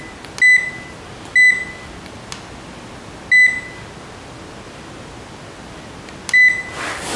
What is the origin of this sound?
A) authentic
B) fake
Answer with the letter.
A